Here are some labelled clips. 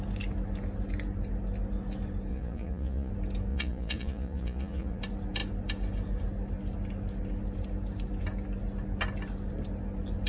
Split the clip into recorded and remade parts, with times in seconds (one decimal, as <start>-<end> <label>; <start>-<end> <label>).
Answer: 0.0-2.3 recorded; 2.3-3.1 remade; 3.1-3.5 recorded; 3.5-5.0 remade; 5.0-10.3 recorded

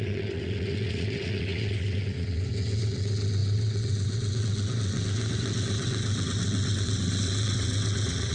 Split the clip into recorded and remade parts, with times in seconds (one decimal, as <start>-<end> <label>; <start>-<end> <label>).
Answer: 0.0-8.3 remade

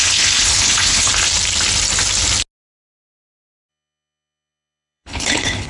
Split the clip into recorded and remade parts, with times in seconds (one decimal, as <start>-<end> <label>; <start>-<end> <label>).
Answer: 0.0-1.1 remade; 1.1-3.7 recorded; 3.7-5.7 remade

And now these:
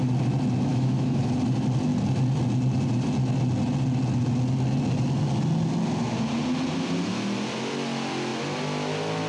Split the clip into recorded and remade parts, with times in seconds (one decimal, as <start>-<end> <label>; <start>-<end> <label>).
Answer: 0.0-0.7 recorded; 0.7-1.2 remade; 1.2-9.3 recorded

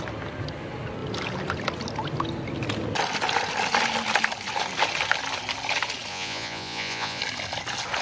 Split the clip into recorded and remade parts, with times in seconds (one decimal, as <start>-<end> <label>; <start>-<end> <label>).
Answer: 0.0-6.1 recorded; 6.1-7.2 remade; 7.2-8.0 recorded

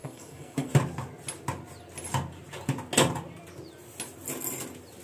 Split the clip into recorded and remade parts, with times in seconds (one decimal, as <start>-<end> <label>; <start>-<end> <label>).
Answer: 0.0-0.7 remade; 0.7-5.0 recorded